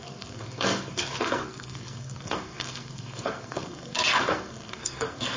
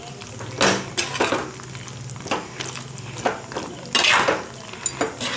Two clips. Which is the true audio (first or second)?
second